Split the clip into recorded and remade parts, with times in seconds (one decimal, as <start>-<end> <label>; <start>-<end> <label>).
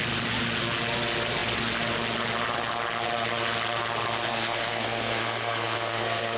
0.0-4.3 recorded; 4.3-6.4 remade